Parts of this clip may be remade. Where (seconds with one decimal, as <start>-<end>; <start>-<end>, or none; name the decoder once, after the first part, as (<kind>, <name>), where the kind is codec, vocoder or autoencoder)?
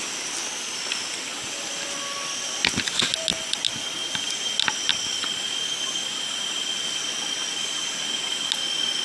none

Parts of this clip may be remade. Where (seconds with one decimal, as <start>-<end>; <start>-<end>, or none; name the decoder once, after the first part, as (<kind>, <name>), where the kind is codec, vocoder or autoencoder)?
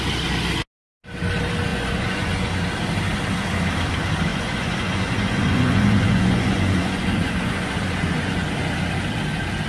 1.7-2.5 (vocoder, Vocos); 4.3-8.5